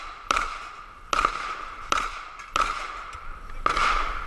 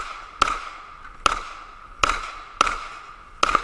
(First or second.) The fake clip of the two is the first